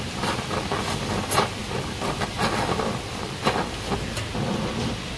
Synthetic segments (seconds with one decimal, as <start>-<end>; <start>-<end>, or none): none